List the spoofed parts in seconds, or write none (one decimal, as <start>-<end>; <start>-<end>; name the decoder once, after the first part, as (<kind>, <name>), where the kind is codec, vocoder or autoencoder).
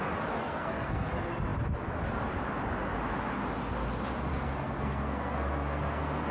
0.4-1.1 (codec, SNAC); 4.3-6.3